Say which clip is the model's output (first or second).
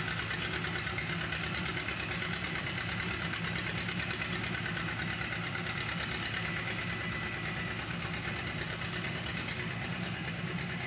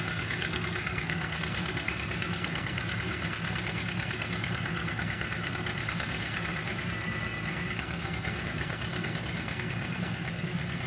second